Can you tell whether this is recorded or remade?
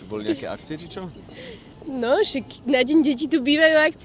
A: recorded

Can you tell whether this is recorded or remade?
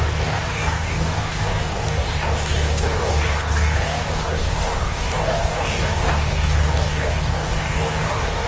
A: remade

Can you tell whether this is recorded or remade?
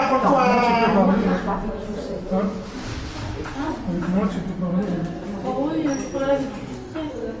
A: recorded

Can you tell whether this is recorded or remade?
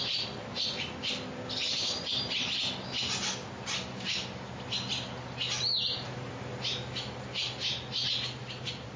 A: recorded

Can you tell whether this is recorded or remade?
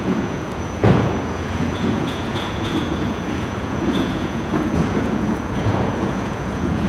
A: remade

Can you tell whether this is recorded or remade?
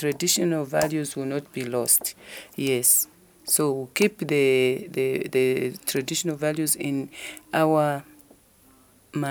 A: recorded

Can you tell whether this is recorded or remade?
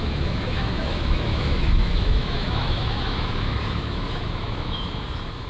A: remade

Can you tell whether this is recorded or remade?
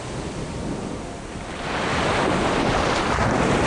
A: recorded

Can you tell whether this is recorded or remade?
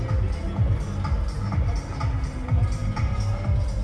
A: recorded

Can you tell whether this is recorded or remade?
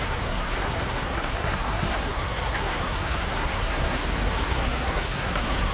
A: remade